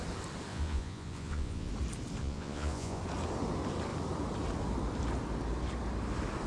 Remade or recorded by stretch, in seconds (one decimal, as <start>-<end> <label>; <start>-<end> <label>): 0.0-0.5 recorded; 0.5-1.7 remade; 1.7-2.2 recorded; 2.2-3.0 remade; 3.0-6.5 recorded